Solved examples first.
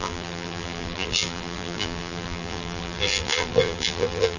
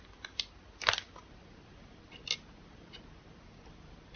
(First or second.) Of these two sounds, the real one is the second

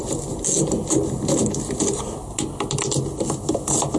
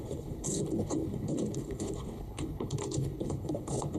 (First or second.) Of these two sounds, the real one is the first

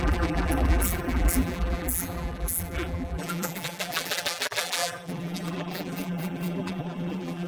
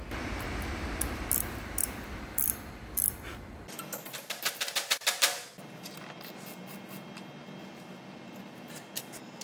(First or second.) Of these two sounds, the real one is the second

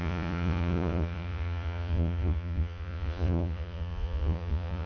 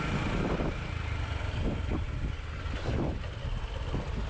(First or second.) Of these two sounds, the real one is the second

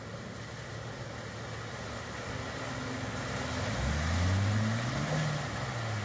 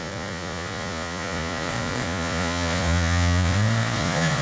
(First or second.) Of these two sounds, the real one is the first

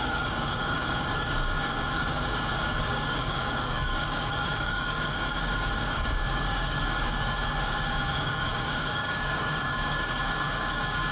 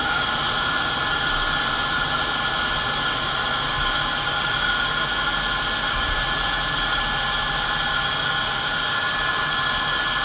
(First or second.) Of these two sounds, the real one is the second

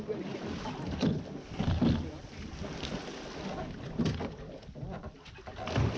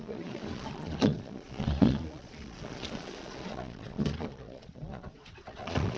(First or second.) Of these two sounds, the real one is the first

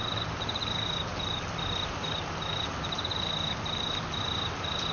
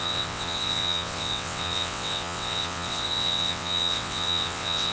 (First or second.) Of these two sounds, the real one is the first